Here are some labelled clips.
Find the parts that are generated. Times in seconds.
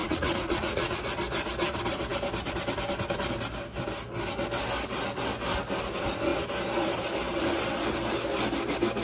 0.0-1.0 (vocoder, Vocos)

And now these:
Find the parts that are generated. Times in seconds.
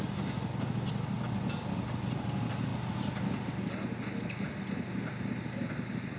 none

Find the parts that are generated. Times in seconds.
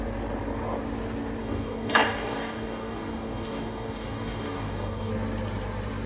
1.4-5.1 (codec, DAC)